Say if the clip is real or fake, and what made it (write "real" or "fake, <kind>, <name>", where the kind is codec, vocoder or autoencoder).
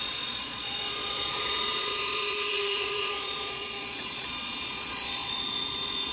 fake, vocoder, Vocos